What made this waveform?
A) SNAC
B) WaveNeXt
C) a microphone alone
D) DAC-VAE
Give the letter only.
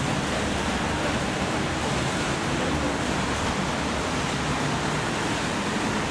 C